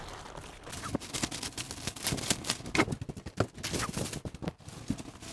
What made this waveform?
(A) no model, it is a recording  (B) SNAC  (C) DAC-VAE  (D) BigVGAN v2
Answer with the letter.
A